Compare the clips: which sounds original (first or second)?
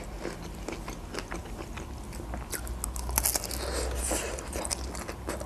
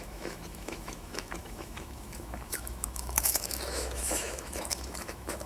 first